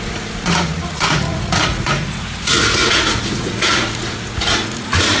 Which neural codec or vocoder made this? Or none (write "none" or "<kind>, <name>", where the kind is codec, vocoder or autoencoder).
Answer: vocoder, Vocos